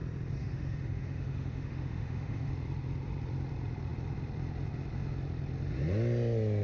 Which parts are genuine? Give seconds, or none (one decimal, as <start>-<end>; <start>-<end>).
0.0-0.4; 2.5-6.6